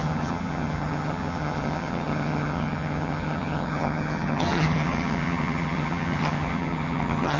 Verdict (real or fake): fake